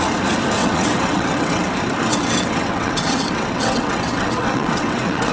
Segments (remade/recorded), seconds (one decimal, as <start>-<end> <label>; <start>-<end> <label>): 0.0-0.6 recorded; 0.6-1.6 remade; 1.6-2.1 recorded; 2.1-5.3 remade